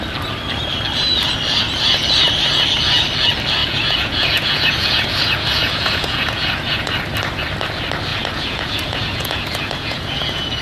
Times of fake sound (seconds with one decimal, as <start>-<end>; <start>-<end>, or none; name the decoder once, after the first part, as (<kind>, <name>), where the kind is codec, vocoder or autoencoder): 3.6-6.9 (vocoder, Vocos); 8.1-10.6